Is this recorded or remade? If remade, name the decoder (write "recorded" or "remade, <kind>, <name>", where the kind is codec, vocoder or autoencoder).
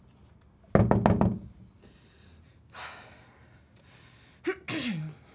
recorded